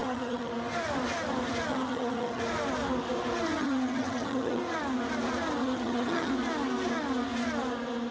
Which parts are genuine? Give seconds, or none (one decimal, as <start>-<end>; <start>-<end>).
0.5-1.7; 2.4-3.6; 4.6-5.6; 6.3-8.1